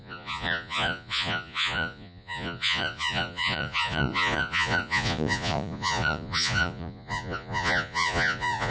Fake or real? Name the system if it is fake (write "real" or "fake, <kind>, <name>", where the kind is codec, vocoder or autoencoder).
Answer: fake, vocoder, Vocos